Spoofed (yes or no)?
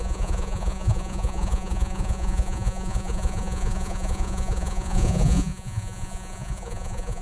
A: yes